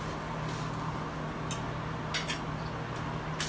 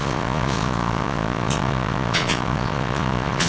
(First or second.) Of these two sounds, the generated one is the second